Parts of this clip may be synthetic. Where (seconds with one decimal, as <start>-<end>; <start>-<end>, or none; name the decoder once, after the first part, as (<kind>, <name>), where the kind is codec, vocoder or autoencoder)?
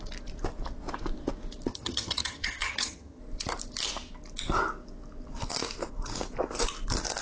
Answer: 1.7-3.2 (vocoder, HiFi-GAN)